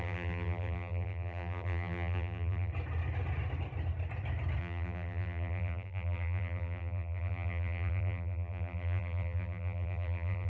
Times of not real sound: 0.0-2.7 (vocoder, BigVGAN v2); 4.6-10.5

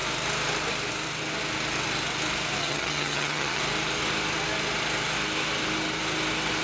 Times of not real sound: 2.6-3.6 (vocoder, HiFi-GAN)

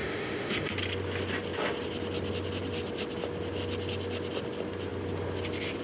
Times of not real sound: 0.0-0.7 (autoencoder, DAC-VAE)

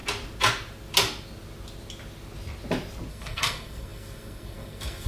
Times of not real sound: 3.1-5.1 (codec, SNAC)